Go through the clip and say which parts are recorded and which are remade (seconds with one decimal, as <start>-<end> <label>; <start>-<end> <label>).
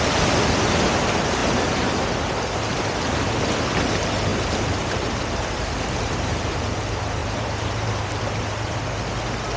0.0-4.3 recorded; 4.3-6.6 remade; 6.6-7.2 recorded; 7.2-8.2 remade; 8.2-9.6 recorded